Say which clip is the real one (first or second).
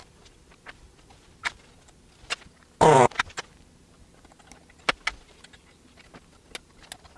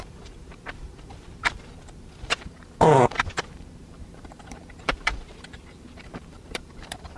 first